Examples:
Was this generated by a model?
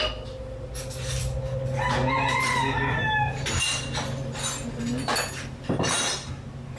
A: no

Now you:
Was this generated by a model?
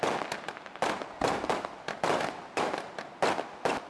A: no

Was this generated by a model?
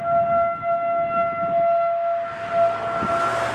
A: no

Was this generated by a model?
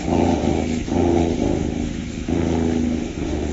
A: yes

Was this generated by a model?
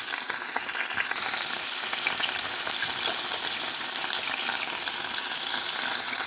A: no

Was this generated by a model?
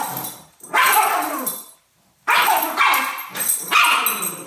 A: no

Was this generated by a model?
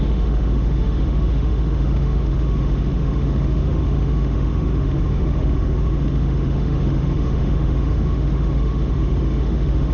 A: yes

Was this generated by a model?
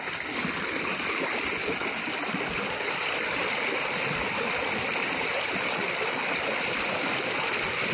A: no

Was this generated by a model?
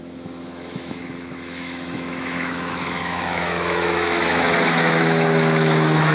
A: yes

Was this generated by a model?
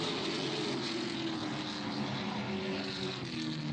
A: no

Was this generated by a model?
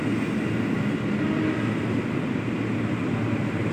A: no